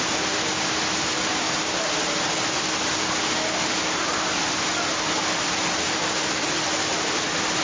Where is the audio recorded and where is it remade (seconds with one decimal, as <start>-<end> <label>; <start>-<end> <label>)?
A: 0.0-7.6 recorded